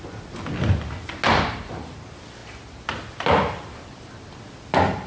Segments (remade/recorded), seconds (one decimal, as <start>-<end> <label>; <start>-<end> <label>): 0.0-5.1 recorded